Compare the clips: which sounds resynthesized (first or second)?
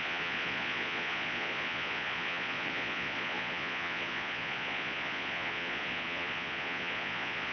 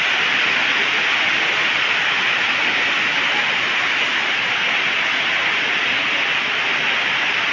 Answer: first